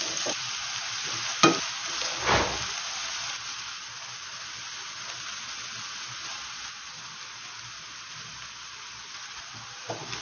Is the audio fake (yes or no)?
no